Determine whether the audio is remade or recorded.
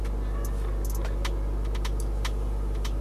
recorded